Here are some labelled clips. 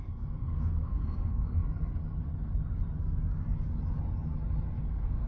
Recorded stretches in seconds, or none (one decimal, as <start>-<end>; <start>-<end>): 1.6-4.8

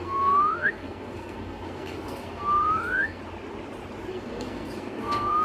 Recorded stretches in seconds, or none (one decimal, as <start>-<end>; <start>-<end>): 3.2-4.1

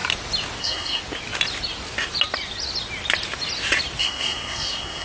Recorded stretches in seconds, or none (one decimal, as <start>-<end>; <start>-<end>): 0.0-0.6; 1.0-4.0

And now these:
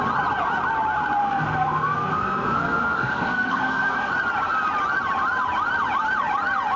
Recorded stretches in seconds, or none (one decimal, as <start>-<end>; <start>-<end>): 0.0-1.2; 4.1-6.8

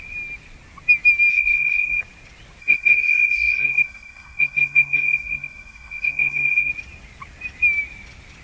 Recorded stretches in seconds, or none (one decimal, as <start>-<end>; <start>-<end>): 0.0-1.3; 2.0-2.6; 6.7-8.4

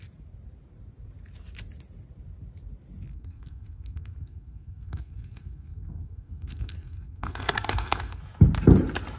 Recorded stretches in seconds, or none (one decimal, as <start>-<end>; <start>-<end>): 0.0-3.1; 8.2-9.2

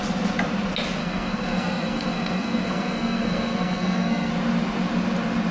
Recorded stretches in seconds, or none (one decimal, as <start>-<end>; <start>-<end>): 0.0-1.0; 4.3-5.5

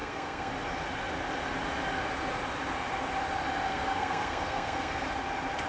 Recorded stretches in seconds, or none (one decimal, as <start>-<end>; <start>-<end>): 0.5-3.7; 5.0-5.7